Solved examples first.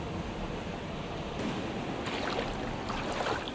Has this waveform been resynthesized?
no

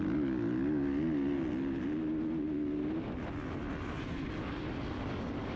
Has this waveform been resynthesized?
no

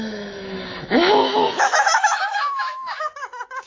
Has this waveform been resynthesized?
yes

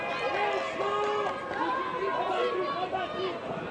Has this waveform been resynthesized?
no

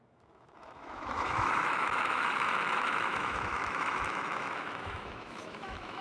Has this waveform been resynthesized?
yes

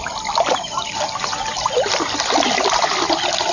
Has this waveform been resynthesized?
no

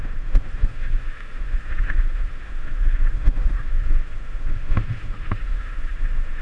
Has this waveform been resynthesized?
yes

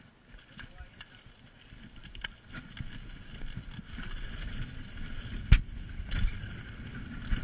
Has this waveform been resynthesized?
no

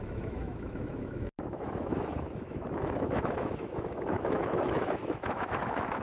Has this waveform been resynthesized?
yes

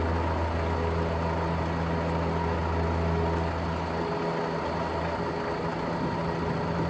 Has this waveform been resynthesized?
no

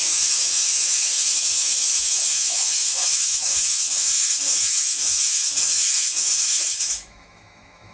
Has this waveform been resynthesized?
yes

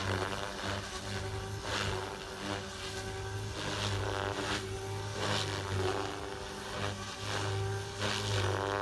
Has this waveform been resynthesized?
no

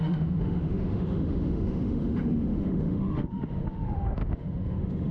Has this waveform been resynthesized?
yes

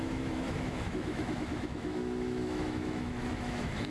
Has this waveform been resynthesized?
yes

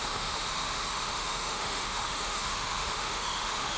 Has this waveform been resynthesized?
yes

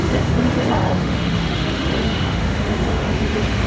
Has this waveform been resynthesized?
yes